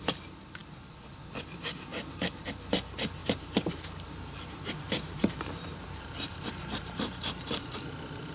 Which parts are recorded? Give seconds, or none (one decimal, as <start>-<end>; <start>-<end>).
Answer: 0.0-1.9; 2.6-3.2; 7.6-8.3